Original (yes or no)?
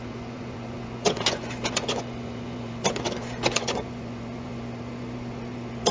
no